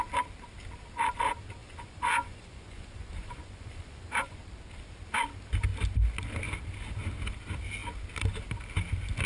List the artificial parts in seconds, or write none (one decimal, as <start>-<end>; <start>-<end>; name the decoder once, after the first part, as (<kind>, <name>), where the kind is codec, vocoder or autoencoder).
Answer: 1.6-4.4 (vocoder, Vocos)